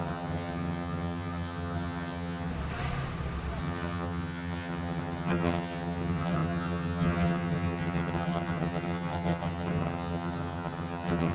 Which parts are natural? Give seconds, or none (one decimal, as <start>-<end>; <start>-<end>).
2.5-3.6